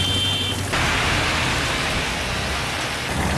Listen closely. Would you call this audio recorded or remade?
recorded